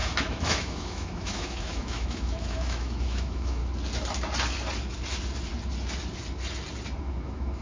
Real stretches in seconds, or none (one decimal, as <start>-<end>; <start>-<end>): 3.6-7.0